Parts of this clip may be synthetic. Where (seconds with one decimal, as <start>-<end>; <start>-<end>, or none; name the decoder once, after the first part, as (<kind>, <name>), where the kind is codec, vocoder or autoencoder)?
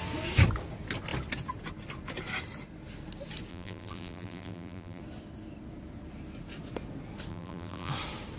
3.5-5.0 (vocoder, BigVGAN v2); 7.3-7.9